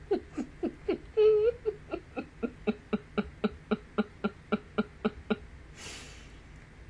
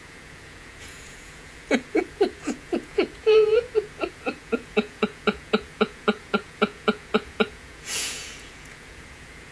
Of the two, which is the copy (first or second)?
second